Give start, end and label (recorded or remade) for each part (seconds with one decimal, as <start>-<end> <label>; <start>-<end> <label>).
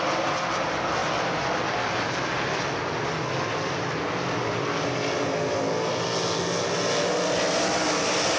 0.0-8.4 recorded